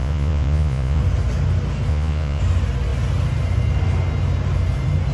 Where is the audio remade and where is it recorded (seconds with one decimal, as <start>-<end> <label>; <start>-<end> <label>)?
0.0-1.0 remade; 1.0-1.9 recorded; 1.9-2.4 remade; 2.4-5.1 recorded